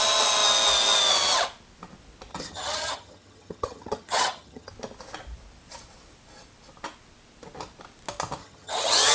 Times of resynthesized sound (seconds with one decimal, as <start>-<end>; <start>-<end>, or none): 2.3-4.7; 8.4-9.1